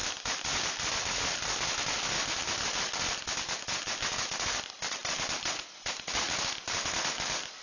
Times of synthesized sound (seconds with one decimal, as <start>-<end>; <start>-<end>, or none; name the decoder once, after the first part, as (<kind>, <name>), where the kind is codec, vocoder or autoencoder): none